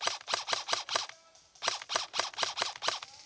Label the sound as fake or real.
real